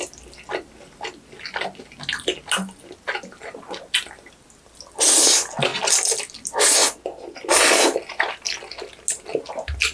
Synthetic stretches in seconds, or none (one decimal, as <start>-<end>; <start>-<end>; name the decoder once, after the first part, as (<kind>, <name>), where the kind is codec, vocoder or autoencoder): none